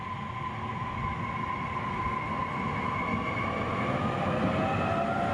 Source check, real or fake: real